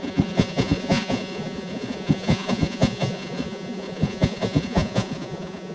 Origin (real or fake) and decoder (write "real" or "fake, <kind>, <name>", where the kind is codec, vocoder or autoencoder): fake, vocoder, Vocos